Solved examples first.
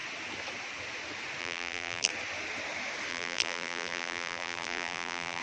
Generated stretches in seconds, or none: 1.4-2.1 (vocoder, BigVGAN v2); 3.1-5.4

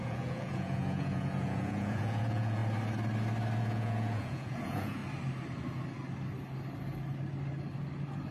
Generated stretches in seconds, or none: 0.0-2.6 (vocoder, Vocos); 3.6-5.0

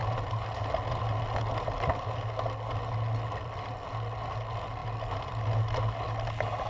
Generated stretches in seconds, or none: none

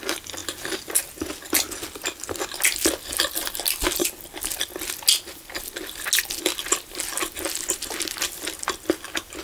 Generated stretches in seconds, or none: none

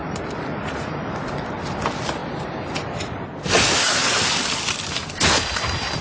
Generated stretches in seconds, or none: 0.0-1.1 (vocoder, BigVGAN v2)

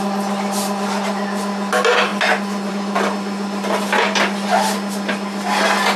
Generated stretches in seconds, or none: none

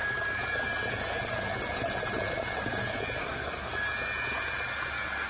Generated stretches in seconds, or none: 3.2-3.7 (codec, SNAC)

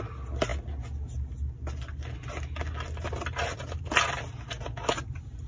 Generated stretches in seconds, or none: none